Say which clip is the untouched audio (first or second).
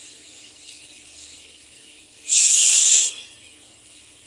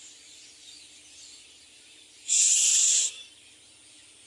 second